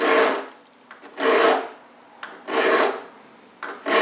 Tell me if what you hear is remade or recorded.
recorded